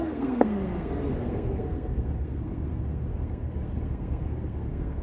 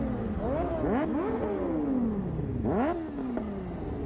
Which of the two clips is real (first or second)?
second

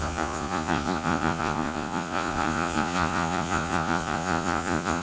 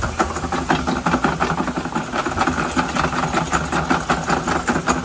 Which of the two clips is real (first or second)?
second